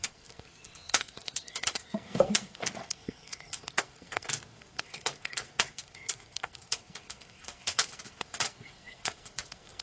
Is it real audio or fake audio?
fake